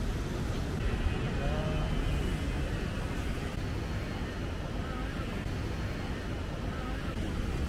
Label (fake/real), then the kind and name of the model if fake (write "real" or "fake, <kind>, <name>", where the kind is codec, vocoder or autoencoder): real